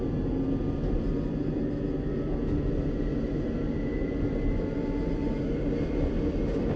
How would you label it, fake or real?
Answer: real